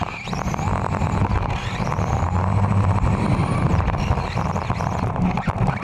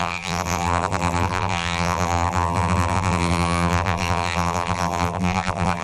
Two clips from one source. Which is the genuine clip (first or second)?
first